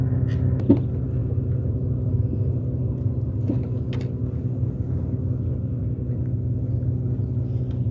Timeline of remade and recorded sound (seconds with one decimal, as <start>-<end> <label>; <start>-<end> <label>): 0.0-7.9 recorded